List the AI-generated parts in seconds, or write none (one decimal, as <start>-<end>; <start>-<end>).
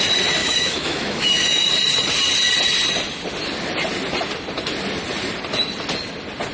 0.4-1.7